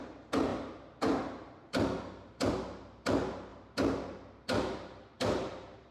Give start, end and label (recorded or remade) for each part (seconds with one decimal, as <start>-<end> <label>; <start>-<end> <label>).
0.0-5.9 recorded